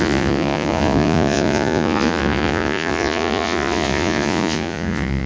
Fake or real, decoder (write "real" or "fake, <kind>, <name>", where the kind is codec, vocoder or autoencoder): fake, vocoder, Vocos